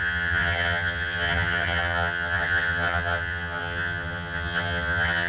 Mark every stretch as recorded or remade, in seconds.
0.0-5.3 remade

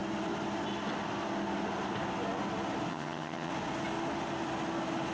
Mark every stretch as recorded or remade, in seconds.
0.0-2.9 recorded; 2.9-3.5 remade; 3.5-5.1 recorded

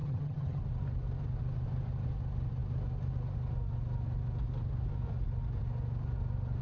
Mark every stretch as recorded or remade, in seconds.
0.0-0.6 remade; 0.6-6.6 recorded

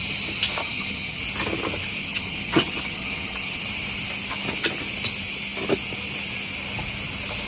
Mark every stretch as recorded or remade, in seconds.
0.0-0.6 recorded; 0.6-1.2 remade; 1.2-2.0 recorded; 2.0-3.6 remade; 3.6-7.5 recorded

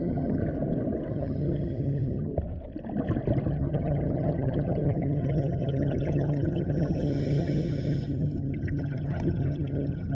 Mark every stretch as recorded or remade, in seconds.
0.0-0.4 remade; 0.4-1.1 recorded; 1.1-2.3 remade; 2.3-3.5 recorded; 3.5-10.1 remade

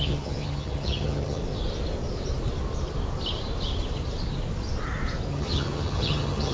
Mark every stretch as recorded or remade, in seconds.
0.0-1.4 remade; 1.4-5.3 recorded; 5.3-6.5 remade